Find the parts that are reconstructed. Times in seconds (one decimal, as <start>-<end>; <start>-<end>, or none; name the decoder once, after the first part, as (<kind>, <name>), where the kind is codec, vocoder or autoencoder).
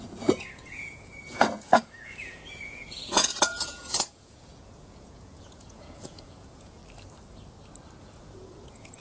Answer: 0.0-6.8 (vocoder, Vocos); 8.0-9.0